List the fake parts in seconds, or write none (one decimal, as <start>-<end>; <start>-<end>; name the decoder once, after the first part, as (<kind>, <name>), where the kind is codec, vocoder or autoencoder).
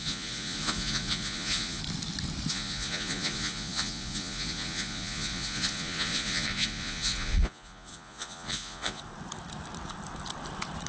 0.0-1.8 (vocoder, Vocos); 2.5-9.0